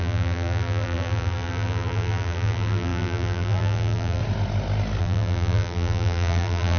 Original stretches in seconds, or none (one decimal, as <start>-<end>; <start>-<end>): 4.2-5.0